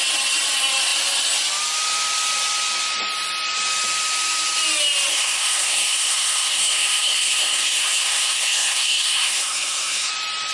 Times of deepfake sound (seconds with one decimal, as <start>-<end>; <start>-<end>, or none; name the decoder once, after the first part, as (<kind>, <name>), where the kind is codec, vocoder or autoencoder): 5.1-10.1 (codec, SNAC)